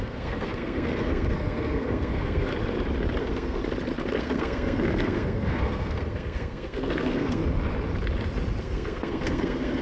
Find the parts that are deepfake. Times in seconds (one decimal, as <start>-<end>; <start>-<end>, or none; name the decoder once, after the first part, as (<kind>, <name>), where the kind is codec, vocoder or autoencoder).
0.0-2.5 (codec, SNAC); 3.2-3.6; 4.2-7.4; 8.6-9.8